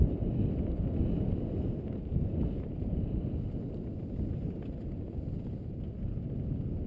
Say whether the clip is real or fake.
real